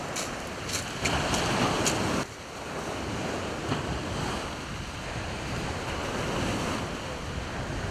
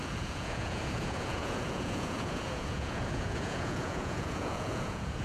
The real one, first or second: first